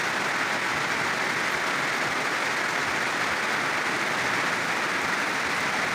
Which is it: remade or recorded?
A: recorded